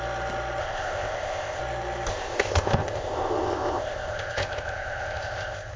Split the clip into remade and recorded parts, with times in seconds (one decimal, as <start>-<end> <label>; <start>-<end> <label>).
0.0-0.6 recorded; 0.6-1.6 remade; 1.6-2.1 recorded; 2.1-5.8 remade

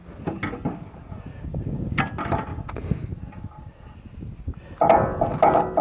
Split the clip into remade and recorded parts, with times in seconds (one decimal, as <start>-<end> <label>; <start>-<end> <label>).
0.0-1.3 recorded; 1.3-2.0 remade; 2.0-2.5 recorded; 2.5-3.0 remade; 3.0-5.8 recorded

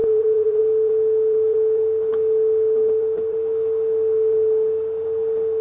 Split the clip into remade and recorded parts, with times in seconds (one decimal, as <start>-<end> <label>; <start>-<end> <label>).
0.0-0.6 remade; 0.6-5.6 recorded

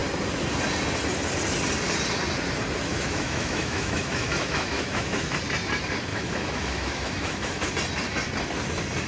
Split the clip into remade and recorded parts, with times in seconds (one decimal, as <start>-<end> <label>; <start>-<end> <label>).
0.0-2.9 recorded; 2.9-5.4 remade; 5.4-6.1 recorded; 6.1-7.7 remade; 7.7-9.1 recorded

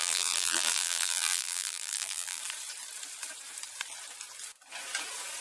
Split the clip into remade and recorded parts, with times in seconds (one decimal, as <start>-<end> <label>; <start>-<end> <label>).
0.0-2.4 remade; 2.4-5.4 recorded

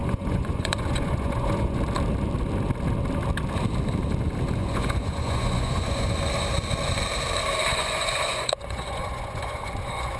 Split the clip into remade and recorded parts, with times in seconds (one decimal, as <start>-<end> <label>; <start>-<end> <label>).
0.0-1.8 remade; 1.8-4.6 recorded; 4.6-6.1 remade; 6.1-7.7 recorded; 7.7-10.2 remade

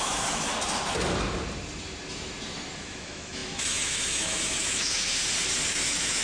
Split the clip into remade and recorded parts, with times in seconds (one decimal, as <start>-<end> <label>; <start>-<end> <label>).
0.0-0.5 remade; 0.5-2.8 recorded; 2.8-5.2 remade; 5.2-5.7 recorded; 5.7-6.2 remade

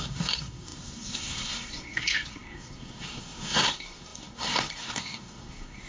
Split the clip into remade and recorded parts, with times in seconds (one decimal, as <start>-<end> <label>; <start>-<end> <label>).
0.0-5.9 remade